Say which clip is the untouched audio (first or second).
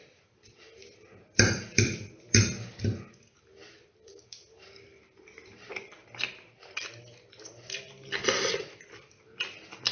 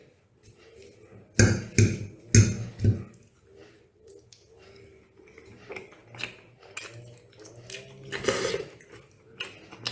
second